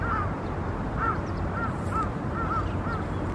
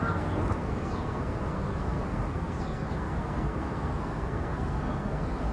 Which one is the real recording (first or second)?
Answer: first